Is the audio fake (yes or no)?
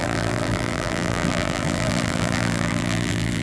yes